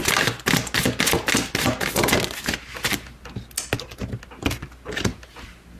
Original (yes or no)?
yes